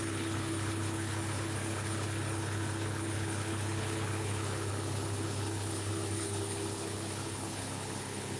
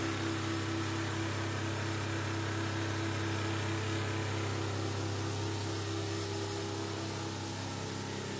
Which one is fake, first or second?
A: first